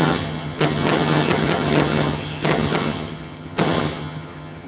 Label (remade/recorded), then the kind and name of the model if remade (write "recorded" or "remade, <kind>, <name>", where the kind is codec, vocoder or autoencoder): remade, vocoder, HiFi-GAN